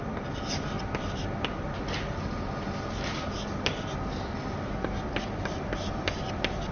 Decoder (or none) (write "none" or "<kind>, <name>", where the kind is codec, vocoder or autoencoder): none